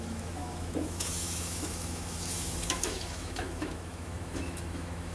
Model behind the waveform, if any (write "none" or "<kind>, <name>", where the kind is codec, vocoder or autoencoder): autoencoder, DAC-VAE